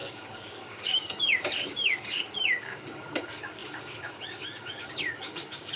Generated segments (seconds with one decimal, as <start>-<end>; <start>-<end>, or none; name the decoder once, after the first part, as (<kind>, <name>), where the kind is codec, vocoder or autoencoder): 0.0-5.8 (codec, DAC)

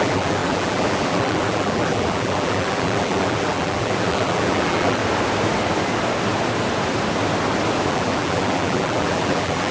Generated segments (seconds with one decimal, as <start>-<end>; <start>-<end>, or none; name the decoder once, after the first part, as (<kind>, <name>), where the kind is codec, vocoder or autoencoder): 0.0-5.0 (vocoder, BigVGAN v2); 7.9-9.7

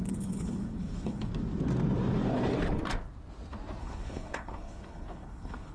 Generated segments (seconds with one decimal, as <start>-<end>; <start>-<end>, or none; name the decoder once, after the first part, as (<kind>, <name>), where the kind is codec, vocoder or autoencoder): 0.0-1.3 (codec, HILCodec); 3.8-5.7

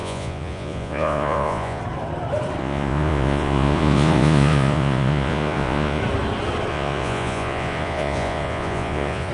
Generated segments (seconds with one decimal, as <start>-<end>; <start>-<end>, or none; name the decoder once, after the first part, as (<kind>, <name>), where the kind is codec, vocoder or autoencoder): 0.0-1.8 (vocoder, Vocos); 2.6-6.0; 6.7-9.3

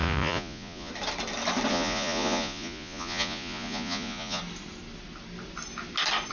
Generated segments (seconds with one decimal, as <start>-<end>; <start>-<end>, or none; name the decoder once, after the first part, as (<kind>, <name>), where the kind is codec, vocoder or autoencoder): 0.0-0.9 (vocoder, Vocos); 1.7-4.4

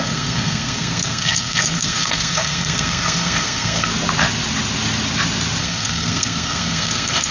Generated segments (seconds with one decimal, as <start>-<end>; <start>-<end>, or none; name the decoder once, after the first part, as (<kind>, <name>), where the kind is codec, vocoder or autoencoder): 0.0-3.9 (codec, SNAC); 5.6-7.3

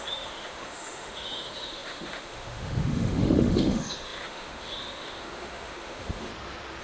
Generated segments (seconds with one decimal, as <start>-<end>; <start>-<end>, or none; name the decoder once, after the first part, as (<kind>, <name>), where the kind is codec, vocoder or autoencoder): 0.0-6.3 (autoencoder, DAC-VAE)

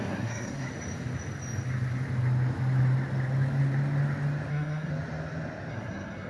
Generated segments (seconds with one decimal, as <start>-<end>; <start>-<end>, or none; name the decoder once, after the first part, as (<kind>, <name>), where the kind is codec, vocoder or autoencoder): 0.0-0.7 (codec, SNAC); 4.5-4.9; 5.7-6.3